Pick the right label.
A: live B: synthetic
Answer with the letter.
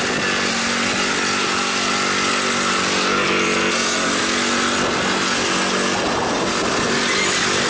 A